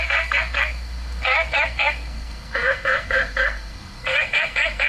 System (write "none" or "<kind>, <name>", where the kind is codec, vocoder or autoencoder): codec, SNAC